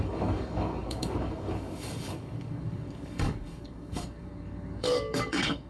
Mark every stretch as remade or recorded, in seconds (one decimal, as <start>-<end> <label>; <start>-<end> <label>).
0.0-5.7 remade

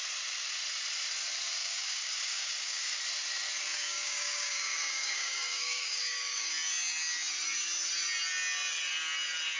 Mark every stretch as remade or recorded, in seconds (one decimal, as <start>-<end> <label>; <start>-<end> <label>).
0.0-1.6 recorded; 1.6-3.0 remade; 3.0-3.7 recorded; 3.7-6.5 remade; 6.5-9.6 recorded

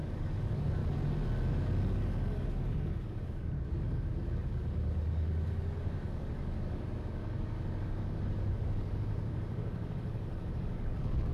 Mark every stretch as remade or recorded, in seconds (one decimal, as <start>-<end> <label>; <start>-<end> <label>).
0.0-0.8 remade; 0.8-1.5 recorded; 1.5-11.3 remade